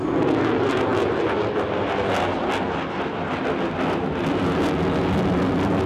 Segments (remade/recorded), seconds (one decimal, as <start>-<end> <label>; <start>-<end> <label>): 0.0-5.9 recorded